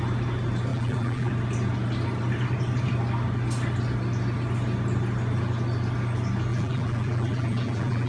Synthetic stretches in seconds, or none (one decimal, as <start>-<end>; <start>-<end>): 0.7-1.3; 6.5-8.1